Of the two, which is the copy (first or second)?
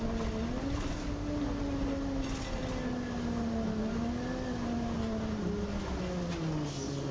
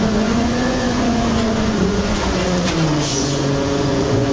second